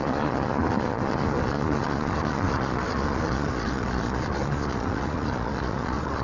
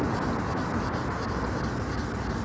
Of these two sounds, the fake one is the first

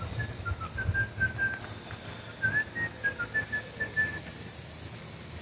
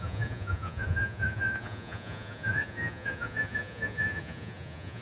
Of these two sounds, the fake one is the second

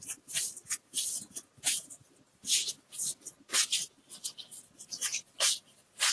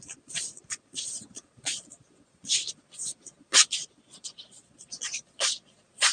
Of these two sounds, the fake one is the second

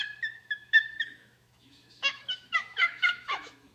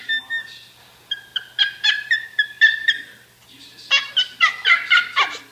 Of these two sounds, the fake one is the first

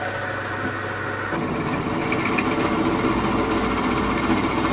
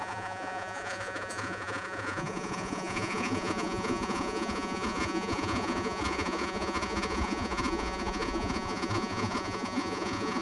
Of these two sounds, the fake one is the second